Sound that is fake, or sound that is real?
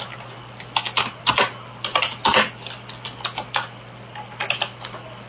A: real